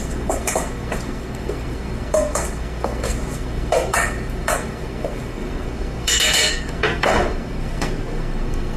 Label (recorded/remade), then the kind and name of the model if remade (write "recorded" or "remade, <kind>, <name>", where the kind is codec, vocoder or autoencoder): remade, codec, SNAC